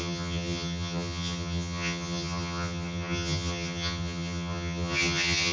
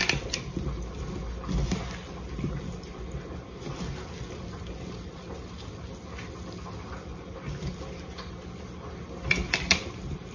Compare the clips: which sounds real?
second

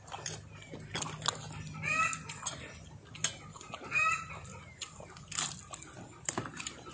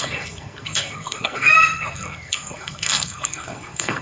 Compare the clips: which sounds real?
first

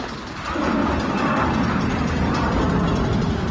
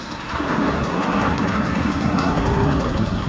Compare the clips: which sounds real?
first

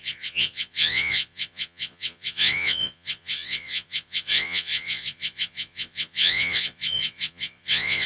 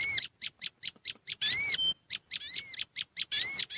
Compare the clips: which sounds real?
second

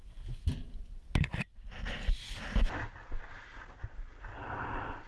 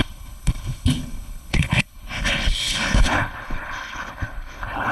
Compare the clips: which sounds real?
first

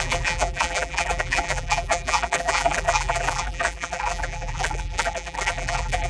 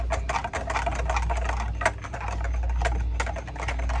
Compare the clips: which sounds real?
second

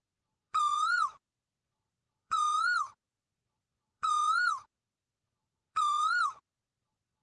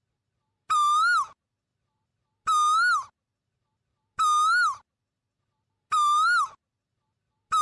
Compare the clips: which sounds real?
second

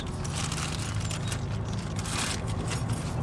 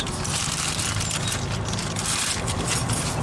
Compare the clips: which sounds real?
first